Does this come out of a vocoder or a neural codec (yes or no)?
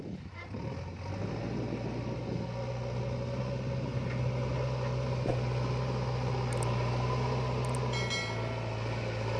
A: no